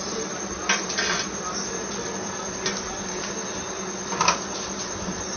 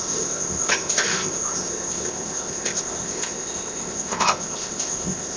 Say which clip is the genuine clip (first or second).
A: first